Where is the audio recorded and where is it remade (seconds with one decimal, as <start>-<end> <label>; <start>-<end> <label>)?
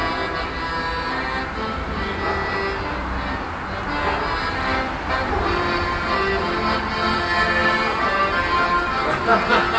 0.0-5.1 recorded; 5.1-9.3 remade; 9.3-9.8 recorded